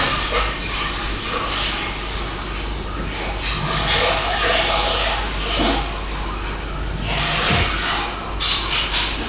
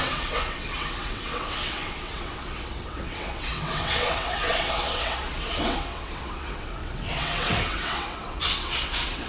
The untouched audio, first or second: first